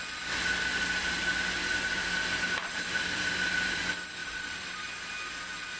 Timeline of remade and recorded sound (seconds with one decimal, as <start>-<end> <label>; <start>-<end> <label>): 0.0-1.0 recorded; 1.0-3.8 remade; 3.8-4.2 recorded; 4.2-4.8 remade; 4.8-5.8 recorded